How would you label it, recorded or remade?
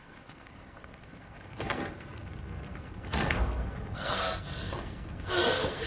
remade